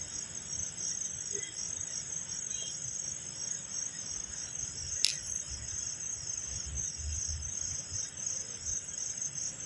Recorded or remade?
recorded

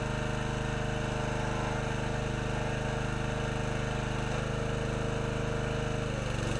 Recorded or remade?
recorded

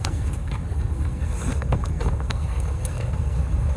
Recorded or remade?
remade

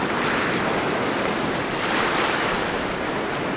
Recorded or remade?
recorded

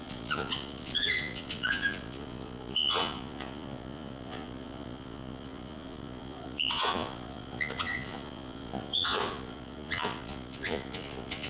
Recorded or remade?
remade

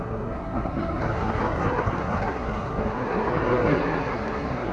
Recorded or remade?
remade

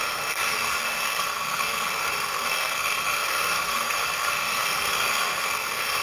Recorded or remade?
remade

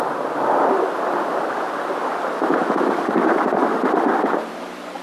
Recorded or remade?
recorded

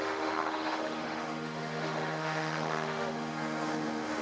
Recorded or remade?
remade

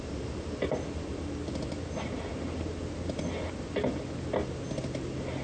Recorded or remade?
recorded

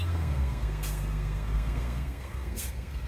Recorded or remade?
remade